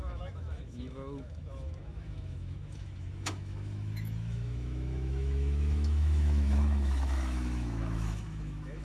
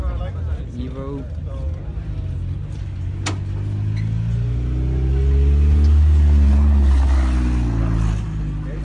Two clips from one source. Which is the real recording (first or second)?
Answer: second